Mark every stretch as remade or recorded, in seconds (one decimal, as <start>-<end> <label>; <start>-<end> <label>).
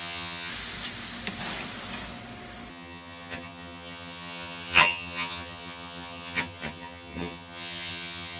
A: 0.0-0.5 remade; 0.5-2.7 recorded; 2.7-8.4 remade